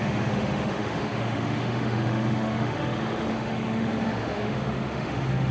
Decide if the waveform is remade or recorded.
remade